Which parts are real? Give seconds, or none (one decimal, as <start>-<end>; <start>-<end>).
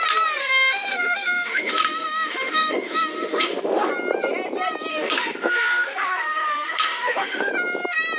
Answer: 0.0-0.4; 3.9-4.9; 7.5-8.2